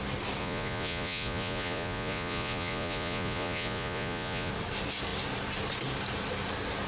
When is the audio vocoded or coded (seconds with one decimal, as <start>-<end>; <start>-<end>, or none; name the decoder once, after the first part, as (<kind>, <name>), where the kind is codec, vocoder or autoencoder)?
0.4-4.5 (vocoder, Vocos)